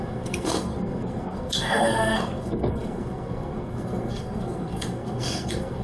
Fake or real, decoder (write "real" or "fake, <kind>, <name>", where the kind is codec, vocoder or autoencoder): fake, codec, SNAC